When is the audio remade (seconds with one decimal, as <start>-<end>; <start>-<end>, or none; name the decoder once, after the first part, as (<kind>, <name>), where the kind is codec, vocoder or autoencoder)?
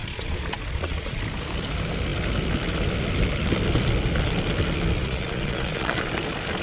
0.0-1.2 (vocoder, Vocos); 5.0-6.1